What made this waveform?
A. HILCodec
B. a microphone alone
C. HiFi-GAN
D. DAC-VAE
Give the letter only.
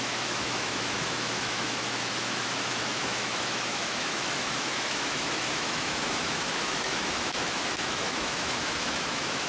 D